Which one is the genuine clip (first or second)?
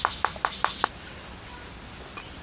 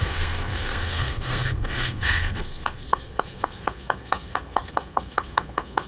first